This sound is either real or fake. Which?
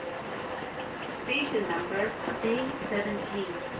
real